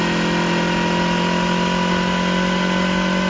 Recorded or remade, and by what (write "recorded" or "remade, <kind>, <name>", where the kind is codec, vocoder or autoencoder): recorded